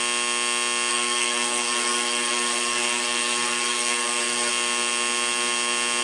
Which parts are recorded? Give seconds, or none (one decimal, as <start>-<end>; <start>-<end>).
0.0-0.9; 4.5-6.0